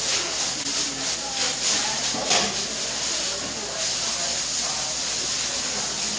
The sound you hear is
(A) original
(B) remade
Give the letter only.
A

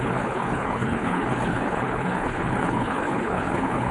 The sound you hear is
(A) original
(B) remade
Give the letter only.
B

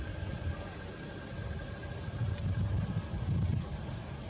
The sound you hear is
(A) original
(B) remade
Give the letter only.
A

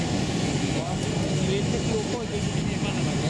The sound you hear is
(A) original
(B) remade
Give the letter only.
A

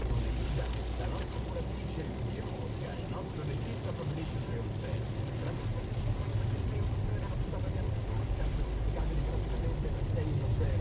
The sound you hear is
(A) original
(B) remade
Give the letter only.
A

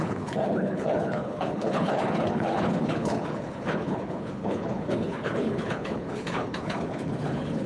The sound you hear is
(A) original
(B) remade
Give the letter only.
B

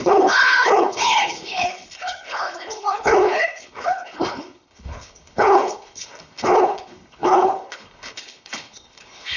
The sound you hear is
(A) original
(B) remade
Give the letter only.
B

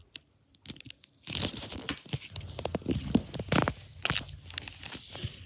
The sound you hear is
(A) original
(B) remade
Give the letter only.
A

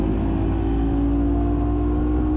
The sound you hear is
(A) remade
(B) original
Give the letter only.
B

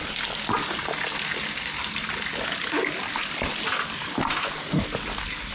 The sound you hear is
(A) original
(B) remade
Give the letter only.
A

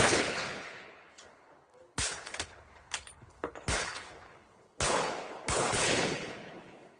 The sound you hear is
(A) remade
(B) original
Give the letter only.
A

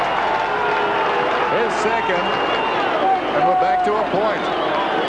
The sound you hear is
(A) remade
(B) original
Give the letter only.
B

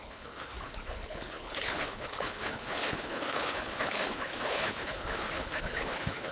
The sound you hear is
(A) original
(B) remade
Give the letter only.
B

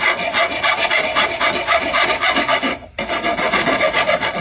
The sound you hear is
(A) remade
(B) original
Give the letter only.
B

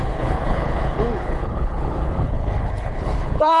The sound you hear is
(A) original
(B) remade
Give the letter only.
B